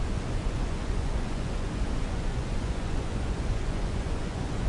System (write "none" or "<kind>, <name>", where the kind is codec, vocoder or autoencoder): vocoder, Vocos